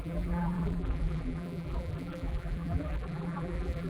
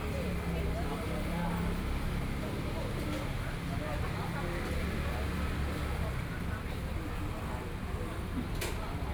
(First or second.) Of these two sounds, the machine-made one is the first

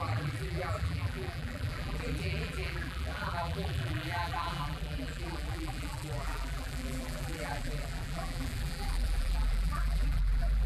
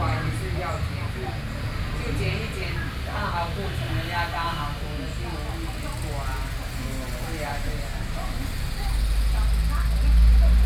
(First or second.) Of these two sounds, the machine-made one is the first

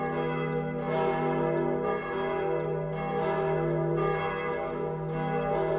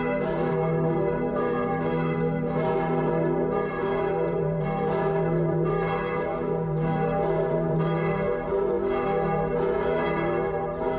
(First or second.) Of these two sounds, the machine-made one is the second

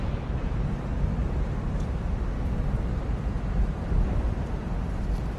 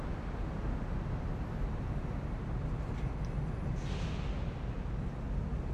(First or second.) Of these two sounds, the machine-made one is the first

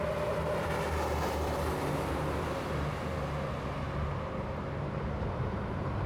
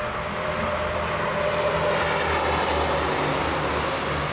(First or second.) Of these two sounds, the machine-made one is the first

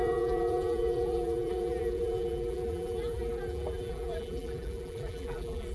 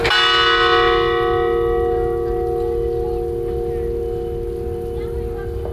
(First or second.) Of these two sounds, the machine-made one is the first